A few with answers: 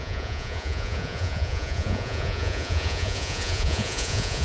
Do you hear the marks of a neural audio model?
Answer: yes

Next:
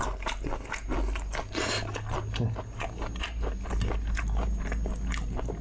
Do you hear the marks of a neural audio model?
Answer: no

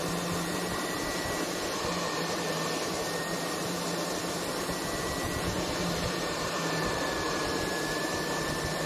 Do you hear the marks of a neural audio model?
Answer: yes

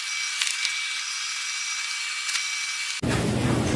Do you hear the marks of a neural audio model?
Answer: no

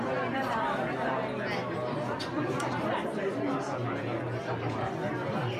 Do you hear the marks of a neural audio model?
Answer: no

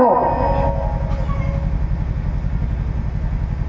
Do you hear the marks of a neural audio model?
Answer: no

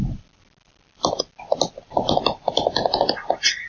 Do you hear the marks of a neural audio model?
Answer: no